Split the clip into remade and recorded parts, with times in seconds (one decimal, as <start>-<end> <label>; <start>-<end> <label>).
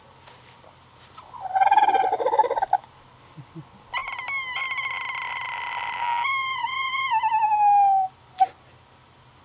0.0-9.4 recorded